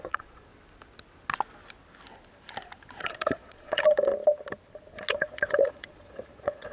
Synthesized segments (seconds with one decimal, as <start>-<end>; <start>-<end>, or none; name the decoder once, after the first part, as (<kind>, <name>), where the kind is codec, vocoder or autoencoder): 0.0-0.5 (vocoder, Vocos); 3.0-4.1; 5.1-6.7